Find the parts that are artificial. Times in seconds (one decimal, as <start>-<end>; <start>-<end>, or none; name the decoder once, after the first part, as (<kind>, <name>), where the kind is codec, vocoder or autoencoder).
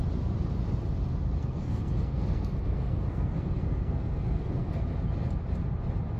1.4-4.8 (codec, SNAC)